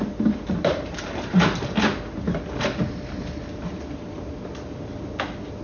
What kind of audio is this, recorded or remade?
recorded